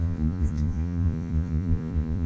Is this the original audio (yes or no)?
no